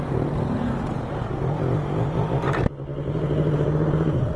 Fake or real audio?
real